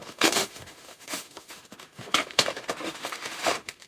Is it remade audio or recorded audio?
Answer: remade